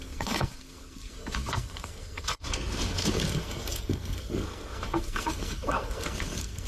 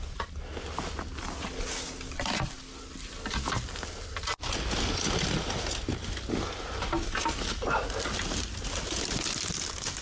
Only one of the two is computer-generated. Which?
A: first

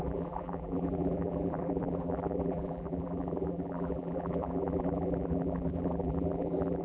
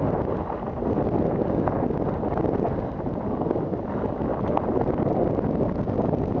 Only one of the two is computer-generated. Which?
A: first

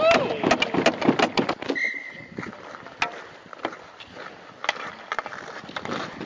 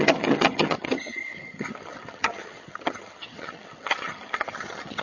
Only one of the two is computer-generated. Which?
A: second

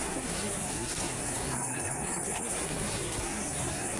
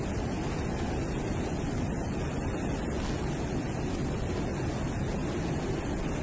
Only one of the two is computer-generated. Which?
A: first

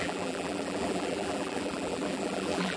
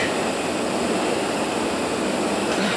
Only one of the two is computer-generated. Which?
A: first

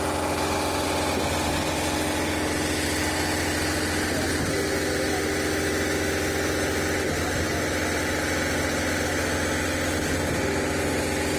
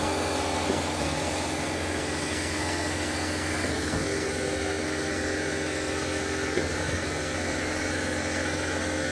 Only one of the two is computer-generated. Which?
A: second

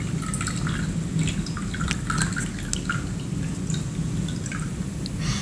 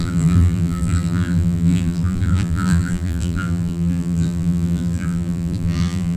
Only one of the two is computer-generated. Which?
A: second